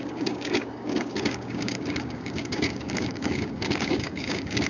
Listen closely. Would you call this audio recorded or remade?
remade